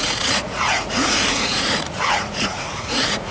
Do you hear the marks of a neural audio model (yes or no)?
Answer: yes